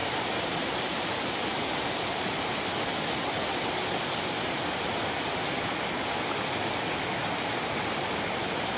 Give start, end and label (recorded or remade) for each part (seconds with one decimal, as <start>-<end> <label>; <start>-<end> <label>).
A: 0.0-2.8 remade; 2.8-8.8 recorded